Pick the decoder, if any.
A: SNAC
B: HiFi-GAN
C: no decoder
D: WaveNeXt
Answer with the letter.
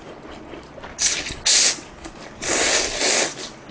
C